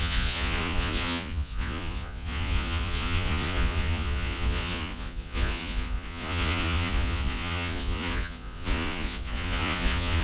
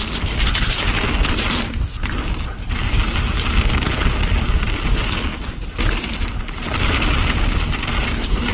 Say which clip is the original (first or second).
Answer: second